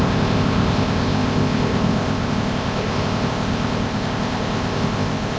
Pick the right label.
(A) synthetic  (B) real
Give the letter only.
A